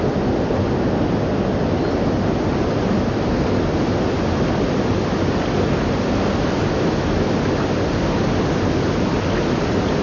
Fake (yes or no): no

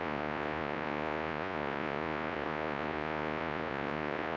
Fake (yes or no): yes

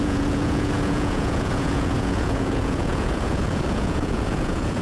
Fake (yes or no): yes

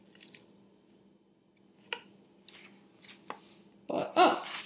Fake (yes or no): no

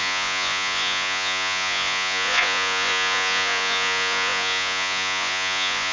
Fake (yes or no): yes